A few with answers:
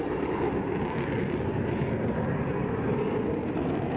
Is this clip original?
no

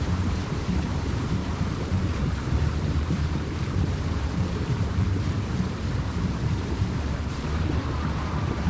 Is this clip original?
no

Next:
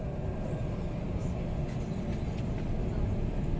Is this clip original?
yes